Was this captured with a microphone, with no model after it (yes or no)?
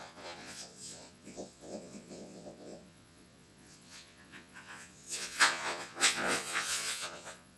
no